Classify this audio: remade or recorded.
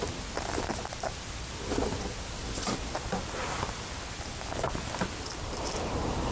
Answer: recorded